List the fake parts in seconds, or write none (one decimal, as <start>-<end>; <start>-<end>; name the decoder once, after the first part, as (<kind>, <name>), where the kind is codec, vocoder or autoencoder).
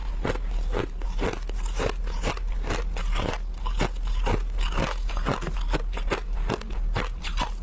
none